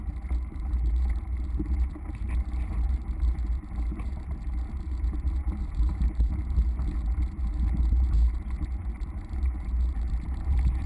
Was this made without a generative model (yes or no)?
no